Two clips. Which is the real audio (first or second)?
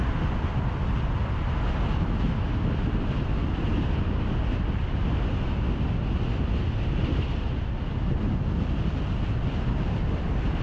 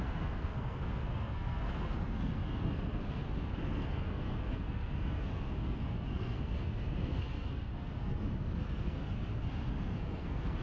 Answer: first